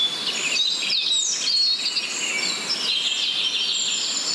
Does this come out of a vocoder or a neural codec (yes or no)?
no